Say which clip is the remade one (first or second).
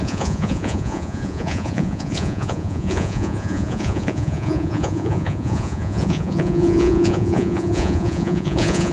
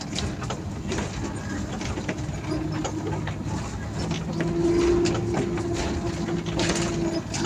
first